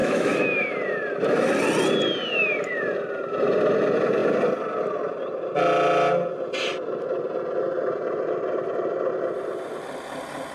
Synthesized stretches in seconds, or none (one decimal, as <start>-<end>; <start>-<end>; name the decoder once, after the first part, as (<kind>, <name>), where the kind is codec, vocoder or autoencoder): 0.0-0.7 (autoencoder, DAC-VAE)

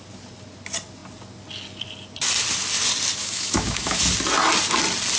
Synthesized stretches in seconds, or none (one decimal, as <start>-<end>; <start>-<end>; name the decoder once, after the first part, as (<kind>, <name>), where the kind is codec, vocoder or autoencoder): 3.2-4.0 (autoencoder, DAC-VAE)

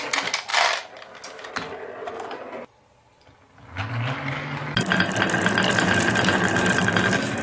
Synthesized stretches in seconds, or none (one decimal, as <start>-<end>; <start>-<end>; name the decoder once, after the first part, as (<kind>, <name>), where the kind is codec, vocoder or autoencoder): none

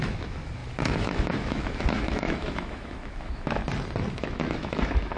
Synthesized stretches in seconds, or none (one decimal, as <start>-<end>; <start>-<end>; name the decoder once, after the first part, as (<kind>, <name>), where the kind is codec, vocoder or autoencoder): 0.0-3.6 (autoencoder, DAC-VAE); 4.1-5.2

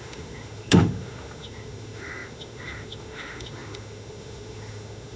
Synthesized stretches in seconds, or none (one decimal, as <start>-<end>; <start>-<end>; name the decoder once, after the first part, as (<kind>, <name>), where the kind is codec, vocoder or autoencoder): 0.0-5.2 (autoencoder, DAC-VAE)

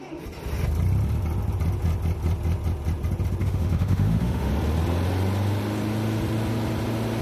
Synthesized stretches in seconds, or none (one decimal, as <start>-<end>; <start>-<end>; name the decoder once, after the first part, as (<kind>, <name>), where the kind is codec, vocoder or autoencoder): 3.4-4.5 (autoencoder, DAC-VAE)

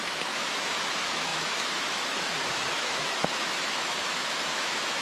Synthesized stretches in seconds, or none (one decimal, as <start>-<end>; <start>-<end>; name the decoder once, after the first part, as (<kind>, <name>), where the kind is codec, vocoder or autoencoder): 0.0-5.0 (autoencoder, DAC-VAE)